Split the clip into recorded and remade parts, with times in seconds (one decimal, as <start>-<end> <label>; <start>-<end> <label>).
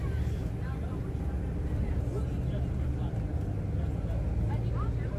0.0-5.2 recorded